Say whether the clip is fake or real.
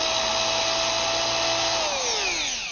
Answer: real